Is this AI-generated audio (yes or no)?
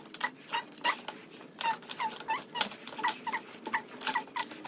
no